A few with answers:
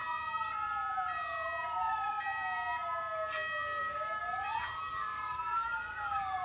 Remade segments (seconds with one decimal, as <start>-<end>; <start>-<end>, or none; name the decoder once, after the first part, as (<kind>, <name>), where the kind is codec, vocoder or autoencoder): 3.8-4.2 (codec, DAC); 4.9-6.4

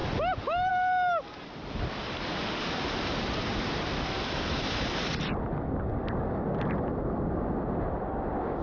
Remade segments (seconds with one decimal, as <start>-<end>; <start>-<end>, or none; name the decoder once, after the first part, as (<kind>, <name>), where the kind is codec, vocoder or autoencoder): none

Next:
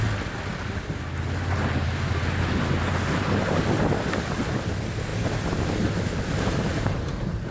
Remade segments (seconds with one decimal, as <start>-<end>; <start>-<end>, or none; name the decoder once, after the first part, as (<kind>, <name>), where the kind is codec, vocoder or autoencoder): none

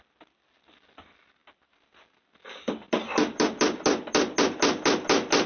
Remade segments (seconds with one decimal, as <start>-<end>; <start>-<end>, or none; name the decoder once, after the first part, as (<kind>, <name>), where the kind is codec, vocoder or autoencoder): none